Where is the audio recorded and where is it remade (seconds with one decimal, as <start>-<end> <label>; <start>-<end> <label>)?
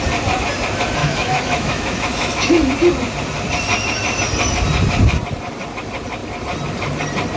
0.0-1.0 recorded; 1.0-2.7 remade; 2.7-7.4 recorded